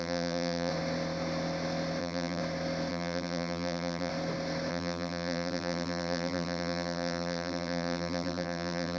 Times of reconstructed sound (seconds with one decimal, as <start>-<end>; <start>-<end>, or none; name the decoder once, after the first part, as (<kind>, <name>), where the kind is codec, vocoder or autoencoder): 0.0-0.7 (vocoder, BigVGAN v2); 2.0-2.4; 2.9-4.1; 4.7-9.0

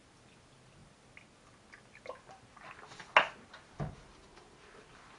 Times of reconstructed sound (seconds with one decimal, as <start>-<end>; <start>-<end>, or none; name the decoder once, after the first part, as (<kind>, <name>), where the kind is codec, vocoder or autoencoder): none

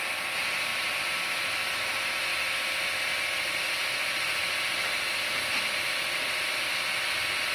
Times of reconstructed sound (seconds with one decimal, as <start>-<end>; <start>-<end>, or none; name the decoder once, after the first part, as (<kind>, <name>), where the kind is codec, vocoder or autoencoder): 2.3-3.5 (vocoder, BigVGAN v2)

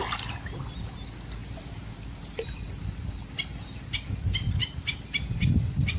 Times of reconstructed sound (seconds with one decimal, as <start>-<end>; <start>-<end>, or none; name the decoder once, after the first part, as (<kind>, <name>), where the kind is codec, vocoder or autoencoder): 1.4-2.6 (vocoder, BigVGAN v2); 3.5-4.1; 4.6-5.4

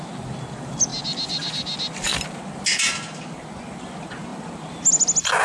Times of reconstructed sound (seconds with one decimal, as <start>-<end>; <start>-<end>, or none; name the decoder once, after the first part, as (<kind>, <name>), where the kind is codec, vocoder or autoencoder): none

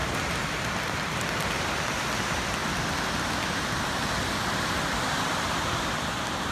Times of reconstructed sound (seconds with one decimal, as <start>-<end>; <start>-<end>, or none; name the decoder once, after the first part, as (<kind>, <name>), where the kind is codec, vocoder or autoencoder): 1.6-6.5 (vocoder, BigVGAN v2)

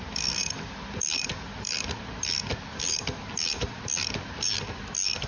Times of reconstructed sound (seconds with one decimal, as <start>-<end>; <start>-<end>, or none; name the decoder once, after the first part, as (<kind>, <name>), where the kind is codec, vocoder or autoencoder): none